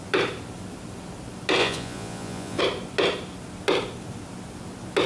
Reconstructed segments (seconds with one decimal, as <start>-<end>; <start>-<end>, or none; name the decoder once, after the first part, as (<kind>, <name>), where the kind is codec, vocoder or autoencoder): 1.6-2.6 (vocoder, Vocos)